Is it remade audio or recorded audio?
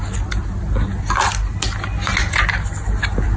recorded